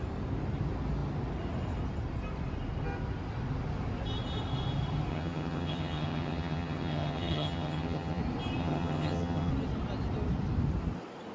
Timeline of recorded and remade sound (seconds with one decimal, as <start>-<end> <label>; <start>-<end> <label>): 0.0-5.1 recorded; 5.1-8.2 remade; 8.2-8.6 recorded; 8.6-9.5 remade; 9.5-11.3 recorded